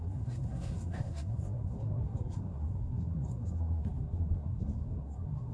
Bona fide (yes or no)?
no